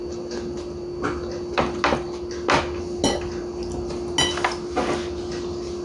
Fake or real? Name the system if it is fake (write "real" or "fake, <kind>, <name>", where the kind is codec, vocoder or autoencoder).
real